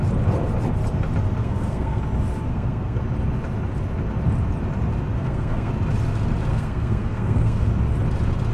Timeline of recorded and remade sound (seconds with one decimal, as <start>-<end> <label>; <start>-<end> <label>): 0.0-1.4 recorded; 1.4-2.0 remade; 2.0-2.5 recorded; 2.5-3.0 remade; 3.0-5.1 recorded; 5.1-5.7 remade; 5.7-6.5 recorded; 6.5-7.7 remade; 7.7-8.5 recorded